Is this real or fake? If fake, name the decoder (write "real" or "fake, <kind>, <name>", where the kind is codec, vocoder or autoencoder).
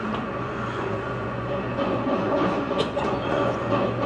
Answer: fake, vocoder, Vocos